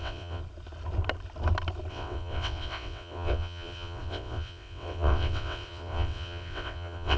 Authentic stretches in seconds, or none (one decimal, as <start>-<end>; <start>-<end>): 0.4-1.9